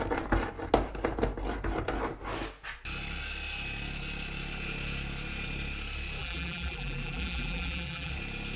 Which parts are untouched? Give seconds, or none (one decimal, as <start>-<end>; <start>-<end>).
0.0-6.2; 8.1-8.6

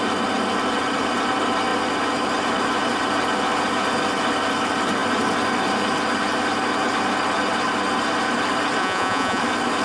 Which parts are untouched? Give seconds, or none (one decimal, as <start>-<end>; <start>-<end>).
0.0-8.8; 9.4-9.8

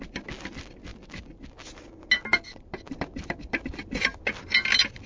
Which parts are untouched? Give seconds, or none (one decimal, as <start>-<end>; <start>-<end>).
0.0-5.1

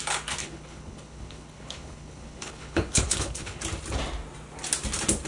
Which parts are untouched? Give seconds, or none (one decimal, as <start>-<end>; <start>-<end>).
0.0-0.4; 3.6-5.3

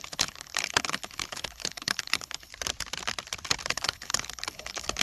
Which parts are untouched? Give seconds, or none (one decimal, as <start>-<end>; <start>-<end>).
2.5-3.7

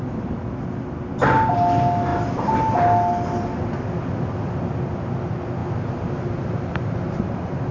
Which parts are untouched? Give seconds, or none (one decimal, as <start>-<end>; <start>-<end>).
0.0-7.7